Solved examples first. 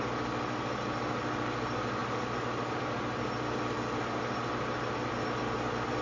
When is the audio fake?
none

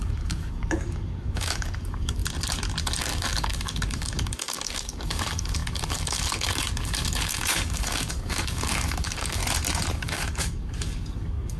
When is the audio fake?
0.0-2.2 (codec, DAC); 3.0-9.4; 9.9-11.6

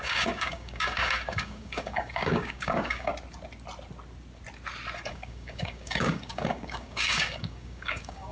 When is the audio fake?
0.0-3.1 (codec, DAC); 5.1-8.3

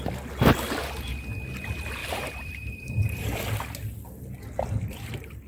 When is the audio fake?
none

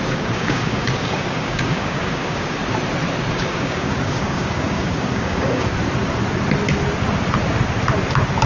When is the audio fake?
0.0-2.6 (codec, DAC); 3.3-5.7